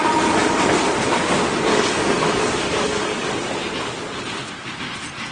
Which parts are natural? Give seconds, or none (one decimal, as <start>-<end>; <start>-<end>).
0.0-1.7; 3.3-5.3

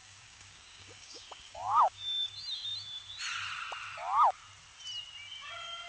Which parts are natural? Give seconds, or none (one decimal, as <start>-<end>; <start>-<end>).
2.3-5.9

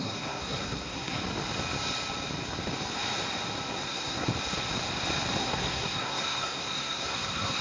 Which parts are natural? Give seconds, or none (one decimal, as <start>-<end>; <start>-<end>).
1.2-3.7; 4.3-5.4

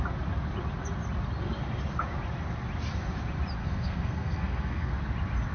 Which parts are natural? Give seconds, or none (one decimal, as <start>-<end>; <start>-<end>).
0.0-3.6; 4.9-5.5

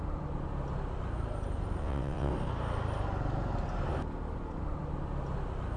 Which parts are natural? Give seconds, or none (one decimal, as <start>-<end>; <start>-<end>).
0.0-1.8; 2.3-5.8

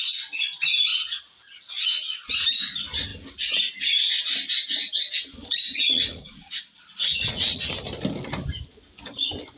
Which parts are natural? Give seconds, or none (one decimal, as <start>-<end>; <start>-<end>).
0.0-5.4; 6.6-7.0; 7.7-9.6